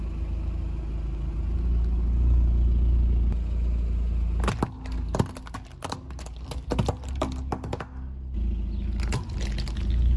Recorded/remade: recorded